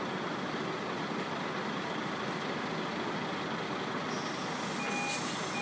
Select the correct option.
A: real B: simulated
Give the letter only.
A